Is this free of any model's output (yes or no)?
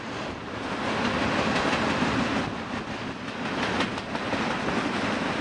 yes